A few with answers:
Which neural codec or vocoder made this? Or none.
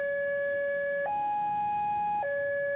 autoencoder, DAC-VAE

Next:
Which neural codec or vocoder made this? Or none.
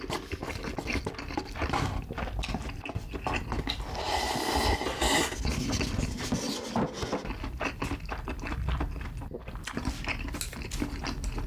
none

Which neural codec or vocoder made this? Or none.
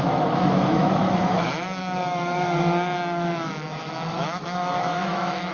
autoencoder, DAC-VAE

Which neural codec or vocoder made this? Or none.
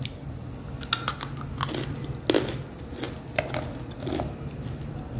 none